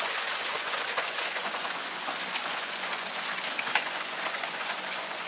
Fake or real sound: fake